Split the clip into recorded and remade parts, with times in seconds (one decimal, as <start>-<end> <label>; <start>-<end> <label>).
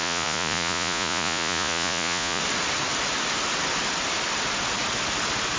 0.0-2.4 remade; 2.4-5.6 recorded